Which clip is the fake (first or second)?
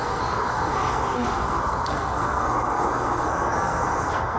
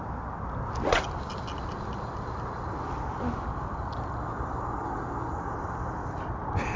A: first